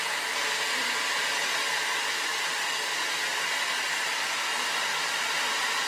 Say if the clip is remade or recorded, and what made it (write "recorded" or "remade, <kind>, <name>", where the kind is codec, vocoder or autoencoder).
recorded